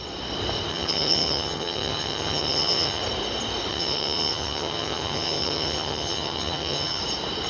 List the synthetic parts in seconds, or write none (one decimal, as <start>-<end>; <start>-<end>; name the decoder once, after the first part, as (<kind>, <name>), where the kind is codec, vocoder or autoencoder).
0.7-3.0 (vocoder, HiFi-GAN); 3.7-7.0